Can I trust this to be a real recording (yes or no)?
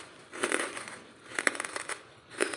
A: no